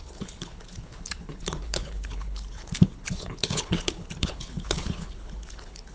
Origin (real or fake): fake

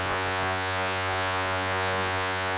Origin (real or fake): fake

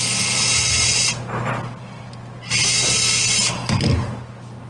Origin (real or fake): real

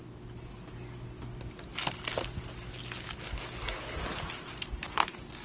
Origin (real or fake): real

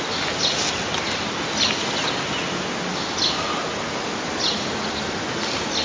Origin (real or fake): real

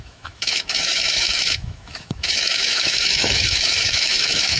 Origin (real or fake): fake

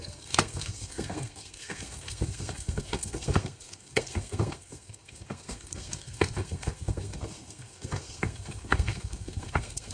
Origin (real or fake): fake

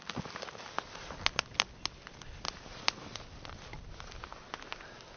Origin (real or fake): real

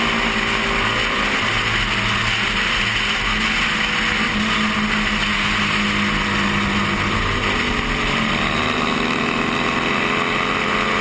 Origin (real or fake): real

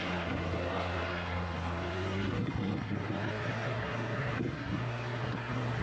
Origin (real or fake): fake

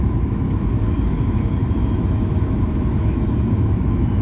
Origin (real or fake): fake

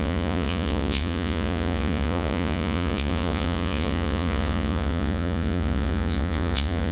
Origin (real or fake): fake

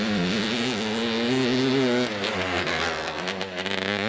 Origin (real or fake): real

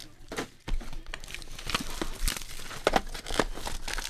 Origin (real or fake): real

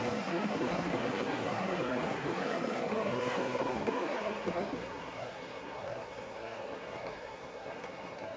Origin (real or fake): fake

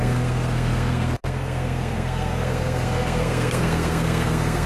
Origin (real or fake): fake